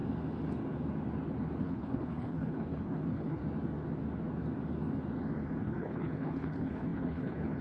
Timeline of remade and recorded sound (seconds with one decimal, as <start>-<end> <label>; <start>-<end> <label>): 0.0-1.6 recorded; 1.6-3.4 remade; 3.4-5.6 recorded; 5.6-7.6 remade